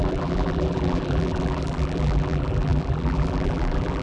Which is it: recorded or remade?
remade